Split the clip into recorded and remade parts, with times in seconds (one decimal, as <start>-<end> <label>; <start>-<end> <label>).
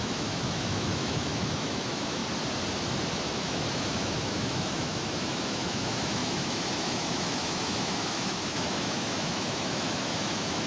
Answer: 0.0-2.2 remade; 2.2-3.1 recorded; 3.1-10.7 remade